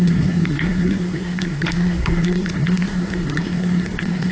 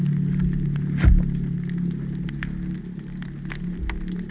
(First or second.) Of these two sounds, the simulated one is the first